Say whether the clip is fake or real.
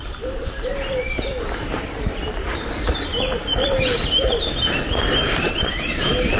fake